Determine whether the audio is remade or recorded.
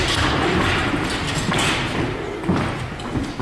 recorded